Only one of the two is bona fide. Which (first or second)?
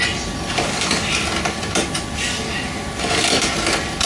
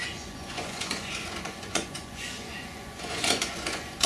first